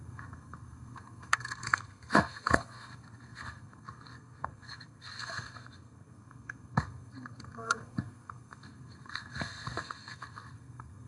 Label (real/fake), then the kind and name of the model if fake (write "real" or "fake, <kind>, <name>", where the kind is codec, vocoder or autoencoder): fake, codec, SNAC